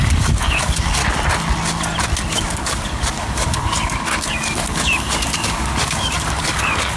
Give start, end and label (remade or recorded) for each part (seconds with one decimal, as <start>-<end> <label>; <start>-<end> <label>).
0.0-1.0 remade; 1.0-2.3 recorded; 2.3-7.0 remade